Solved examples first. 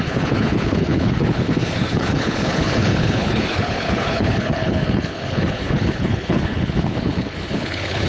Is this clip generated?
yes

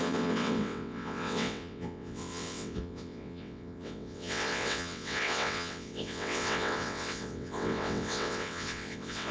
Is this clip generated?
yes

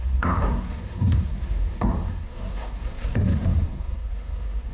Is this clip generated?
yes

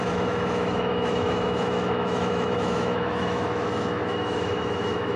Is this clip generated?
yes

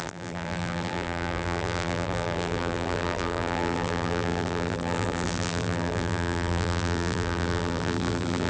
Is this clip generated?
yes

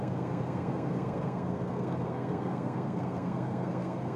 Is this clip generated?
yes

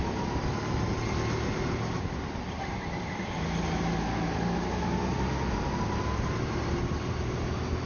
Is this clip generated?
no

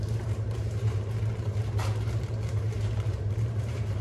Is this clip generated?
yes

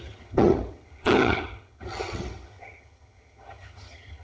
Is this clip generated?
yes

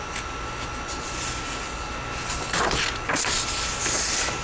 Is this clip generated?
no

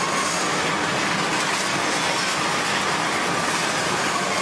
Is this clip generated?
no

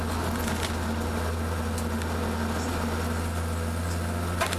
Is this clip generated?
no